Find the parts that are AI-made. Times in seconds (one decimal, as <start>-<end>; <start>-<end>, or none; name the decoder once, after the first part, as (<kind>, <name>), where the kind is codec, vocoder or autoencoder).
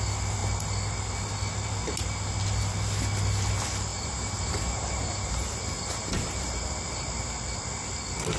3.9-6.7 (vocoder, BigVGAN v2)